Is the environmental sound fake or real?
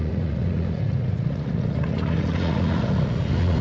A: fake